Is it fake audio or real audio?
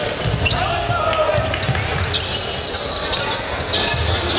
real